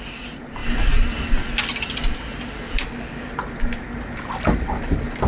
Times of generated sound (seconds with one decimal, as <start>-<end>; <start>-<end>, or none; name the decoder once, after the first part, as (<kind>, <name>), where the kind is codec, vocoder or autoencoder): none